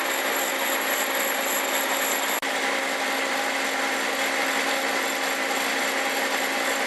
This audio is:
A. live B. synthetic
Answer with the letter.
A